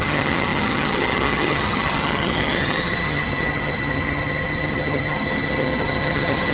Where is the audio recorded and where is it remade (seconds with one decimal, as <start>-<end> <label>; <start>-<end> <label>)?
0.0-6.5 remade